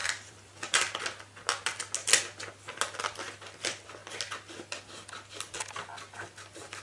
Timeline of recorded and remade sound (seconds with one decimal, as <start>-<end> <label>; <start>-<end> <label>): 0.0-1.0 remade; 1.0-6.8 recorded